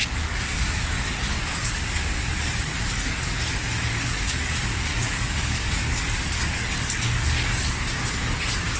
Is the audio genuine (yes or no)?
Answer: no